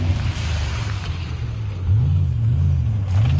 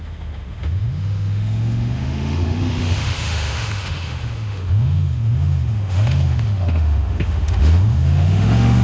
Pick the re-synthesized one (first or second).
second